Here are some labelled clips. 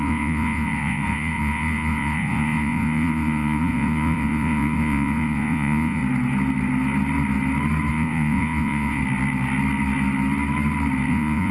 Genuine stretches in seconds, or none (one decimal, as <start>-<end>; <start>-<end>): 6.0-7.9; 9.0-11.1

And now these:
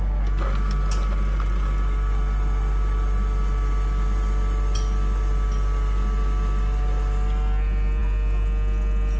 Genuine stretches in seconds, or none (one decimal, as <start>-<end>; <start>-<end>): 0.0-9.2

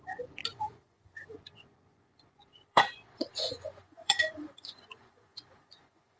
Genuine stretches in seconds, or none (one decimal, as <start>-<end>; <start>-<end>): none

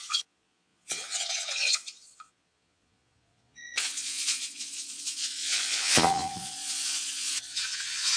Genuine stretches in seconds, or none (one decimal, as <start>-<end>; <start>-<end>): none

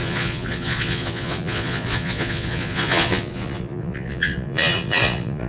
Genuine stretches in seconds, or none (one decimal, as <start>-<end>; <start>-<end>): none

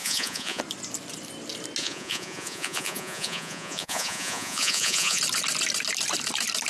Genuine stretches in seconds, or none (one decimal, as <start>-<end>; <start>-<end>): 0.6-1.8; 5.2-6.7

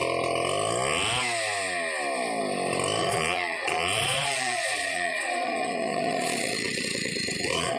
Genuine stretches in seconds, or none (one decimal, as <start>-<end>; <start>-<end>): 0.0-3.0